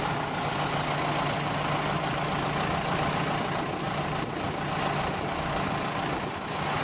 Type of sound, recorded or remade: recorded